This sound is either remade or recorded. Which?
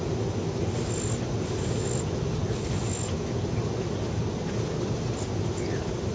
recorded